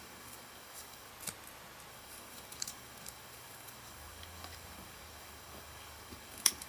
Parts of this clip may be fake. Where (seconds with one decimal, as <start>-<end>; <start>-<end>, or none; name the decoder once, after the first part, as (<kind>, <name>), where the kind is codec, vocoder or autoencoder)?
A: 0.0-1.1 (codec, DAC); 1.9-6.7